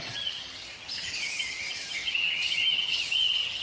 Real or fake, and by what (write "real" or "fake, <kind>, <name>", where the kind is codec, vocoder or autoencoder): fake, vocoder, HiFi-GAN